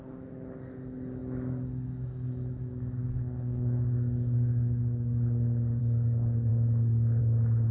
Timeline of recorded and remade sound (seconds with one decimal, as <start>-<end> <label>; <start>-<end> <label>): 0.0-1.2 recorded; 1.2-5.8 remade; 5.8-6.5 recorded; 6.5-7.2 remade; 7.2-7.7 recorded